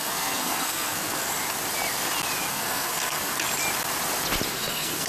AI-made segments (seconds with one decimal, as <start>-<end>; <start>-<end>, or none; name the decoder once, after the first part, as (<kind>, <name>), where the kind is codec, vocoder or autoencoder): 0.0-1.3 (codec, SNAC); 2.5-3.3; 4.5-5.1